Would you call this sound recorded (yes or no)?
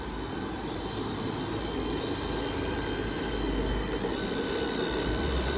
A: yes